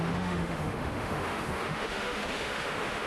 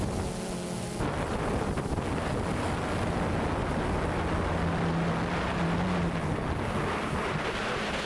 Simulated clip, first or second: first